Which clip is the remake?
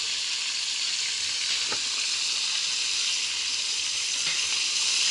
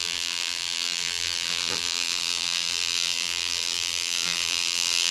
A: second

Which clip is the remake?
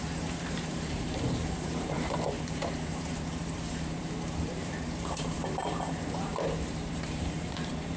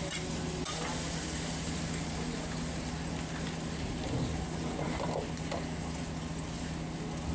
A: first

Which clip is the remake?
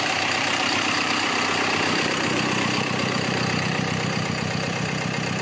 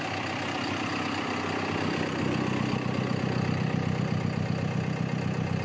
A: first